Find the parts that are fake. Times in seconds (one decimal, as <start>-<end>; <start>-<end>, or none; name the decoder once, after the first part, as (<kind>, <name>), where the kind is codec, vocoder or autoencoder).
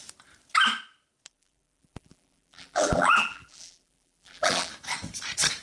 1.3-4.7 (vocoder, BigVGAN v2)